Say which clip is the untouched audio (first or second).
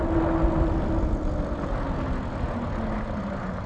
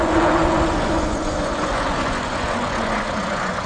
first